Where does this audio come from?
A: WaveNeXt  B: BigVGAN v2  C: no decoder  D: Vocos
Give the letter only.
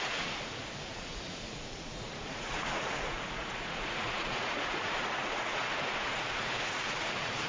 D